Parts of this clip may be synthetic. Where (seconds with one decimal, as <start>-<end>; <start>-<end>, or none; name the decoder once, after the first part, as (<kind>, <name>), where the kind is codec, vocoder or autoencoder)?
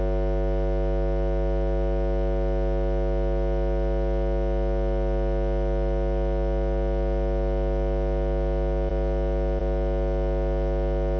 none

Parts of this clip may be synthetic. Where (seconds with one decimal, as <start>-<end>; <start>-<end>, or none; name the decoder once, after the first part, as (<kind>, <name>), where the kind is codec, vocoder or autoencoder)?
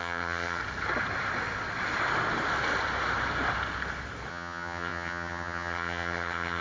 0.0-0.6 (vocoder, HiFi-GAN); 4.3-6.6